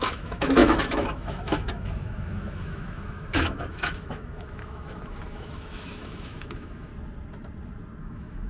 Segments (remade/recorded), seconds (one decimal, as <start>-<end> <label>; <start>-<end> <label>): 0.0-6.9 remade; 6.9-8.0 recorded; 8.0-8.5 remade

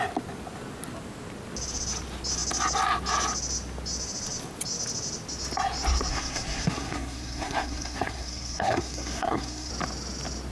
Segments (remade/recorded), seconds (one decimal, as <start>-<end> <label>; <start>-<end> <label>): 0.0-6.1 recorded; 6.1-9.7 remade; 9.7-10.5 recorded

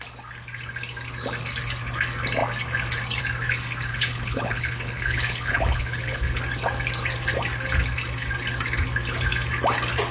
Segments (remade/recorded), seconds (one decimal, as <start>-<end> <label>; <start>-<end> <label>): 0.0-3.9 recorded; 3.9-6.4 remade; 6.4-10.1 recorded